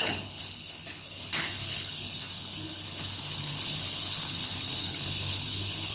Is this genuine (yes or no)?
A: no